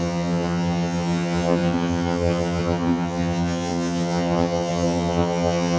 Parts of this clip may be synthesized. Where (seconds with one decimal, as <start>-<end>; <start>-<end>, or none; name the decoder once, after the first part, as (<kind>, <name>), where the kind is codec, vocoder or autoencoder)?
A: 0.0-5.8 (vocoder, HiFi-GAN)